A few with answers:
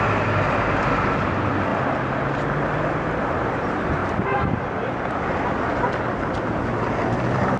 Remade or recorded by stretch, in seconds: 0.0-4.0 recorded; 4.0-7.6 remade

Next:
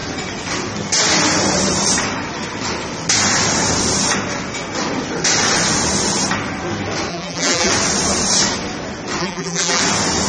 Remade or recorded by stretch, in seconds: 0.0-7.1 recorded; 7.1-7.7 remade; 7.7-9.2 recorded; 9.2-9.8 remade; 9.8-10.3 recorded

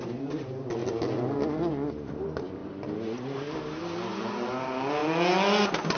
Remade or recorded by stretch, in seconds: 0.0-6.0 recorded

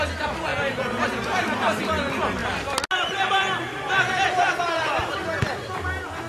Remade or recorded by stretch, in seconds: 0.0-6.3 recorded